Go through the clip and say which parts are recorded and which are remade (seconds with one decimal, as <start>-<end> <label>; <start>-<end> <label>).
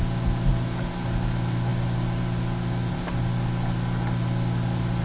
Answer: 0.0-5.0 recorded